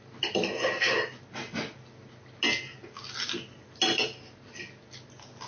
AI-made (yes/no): no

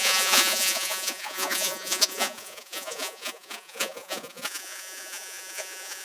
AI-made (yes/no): yes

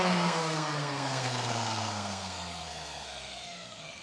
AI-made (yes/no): yes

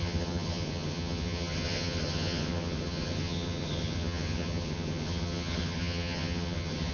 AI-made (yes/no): yes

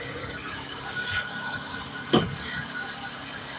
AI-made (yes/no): yes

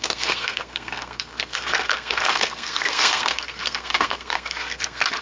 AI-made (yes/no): yes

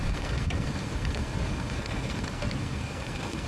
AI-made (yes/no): yes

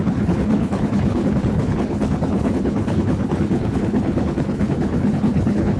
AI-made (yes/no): yes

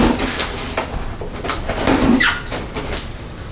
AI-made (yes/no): no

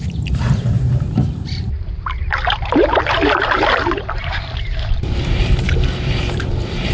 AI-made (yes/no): yes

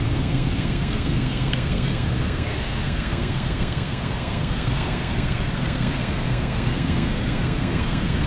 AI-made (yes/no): yes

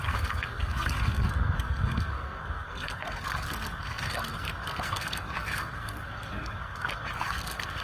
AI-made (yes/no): yes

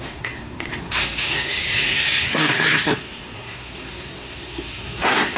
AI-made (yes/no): yes